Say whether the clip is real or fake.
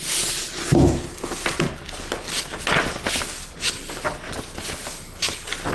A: real